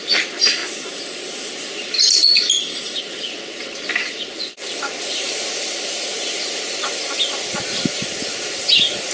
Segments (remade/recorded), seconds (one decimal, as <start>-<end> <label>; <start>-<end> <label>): 0.0-0.6 remade; 0.6-5.0 recorded; 5.0-6.1 remade; 6.1-6.7 recorded; 6.7-9.1 remade